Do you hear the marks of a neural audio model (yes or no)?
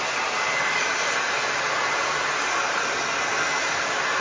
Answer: no